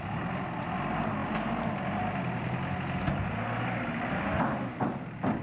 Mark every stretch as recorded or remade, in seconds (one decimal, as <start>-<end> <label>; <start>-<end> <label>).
0.0-5.4 recorded